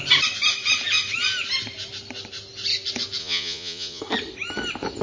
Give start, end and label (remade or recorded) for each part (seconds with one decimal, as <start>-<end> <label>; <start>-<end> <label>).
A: 0.0-3.2 recorded; 3.2-4.0 remade; 4.0-5.0 recorded